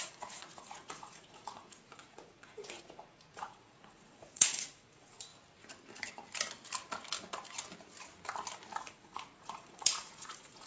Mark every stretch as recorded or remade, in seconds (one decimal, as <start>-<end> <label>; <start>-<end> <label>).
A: 0.0-5.3 remade; 5.3-8.8 recorded; 8.8-10.7 remade